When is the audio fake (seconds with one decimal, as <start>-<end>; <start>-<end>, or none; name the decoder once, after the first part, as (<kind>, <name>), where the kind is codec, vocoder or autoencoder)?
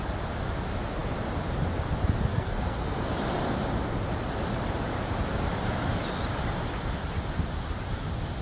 2.3-3.0 (codec, SNAC)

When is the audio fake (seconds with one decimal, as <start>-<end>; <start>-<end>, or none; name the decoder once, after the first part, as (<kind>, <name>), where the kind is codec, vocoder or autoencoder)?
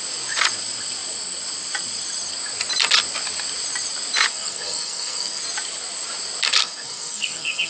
4.3-5.4 (codec, SNAC); 6.6-7.7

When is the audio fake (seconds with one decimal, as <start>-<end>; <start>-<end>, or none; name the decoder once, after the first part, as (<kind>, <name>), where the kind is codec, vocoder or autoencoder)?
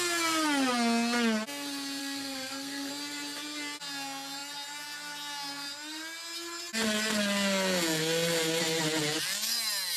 2.0-2.9 (codec, SNAC)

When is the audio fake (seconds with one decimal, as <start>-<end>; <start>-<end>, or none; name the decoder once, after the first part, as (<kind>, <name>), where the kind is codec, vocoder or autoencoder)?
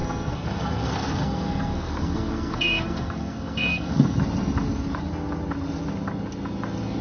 0.0-4.2 (codec, SNAC)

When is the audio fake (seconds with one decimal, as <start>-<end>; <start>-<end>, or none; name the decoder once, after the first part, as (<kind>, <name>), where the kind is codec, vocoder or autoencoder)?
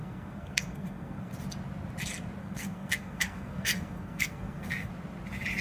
0.0-1.3 (codec, SNAC); 2.4-4.9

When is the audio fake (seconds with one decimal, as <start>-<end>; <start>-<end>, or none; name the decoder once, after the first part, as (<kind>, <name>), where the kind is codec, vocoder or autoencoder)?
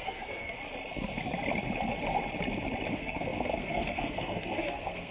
0.0-0.6 (codec, SNAC); 2.9-5.1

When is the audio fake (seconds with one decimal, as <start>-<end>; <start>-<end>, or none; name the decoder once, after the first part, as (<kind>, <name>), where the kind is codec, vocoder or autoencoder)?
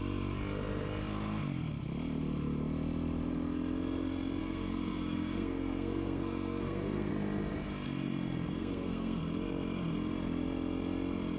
4.4-7.1 (codec, SNAC); 8.5-9.2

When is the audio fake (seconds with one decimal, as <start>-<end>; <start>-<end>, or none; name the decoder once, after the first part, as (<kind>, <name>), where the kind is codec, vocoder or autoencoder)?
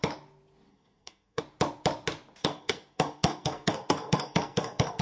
0.7-1.4 (codec, SNAC); 2.4-5.0